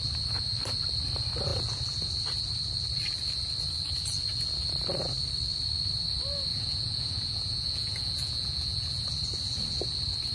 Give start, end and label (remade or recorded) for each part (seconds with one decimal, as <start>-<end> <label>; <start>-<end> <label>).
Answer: 0.0-6.5 recorded; 6.5-9.0 remade; 9.0-10.3 recorded